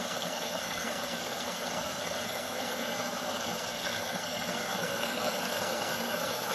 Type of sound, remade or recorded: remade